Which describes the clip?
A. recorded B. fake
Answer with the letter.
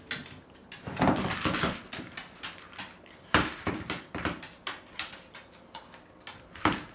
A